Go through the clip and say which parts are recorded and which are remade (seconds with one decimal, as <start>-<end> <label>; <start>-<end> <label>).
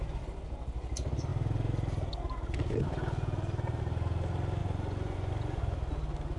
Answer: 0.0-4.6 recorded; 4.6-5.6 remade; 5.6-6.4 recorded